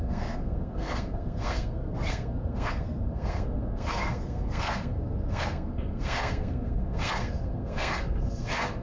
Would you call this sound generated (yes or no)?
yes